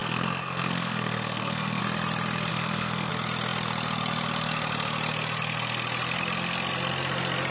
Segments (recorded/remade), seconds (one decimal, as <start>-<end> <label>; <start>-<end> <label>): 0.0-1.8 remade; 1.8-2.5 recorded; 2.5-3.1 remade; 3.1-7.5 recorded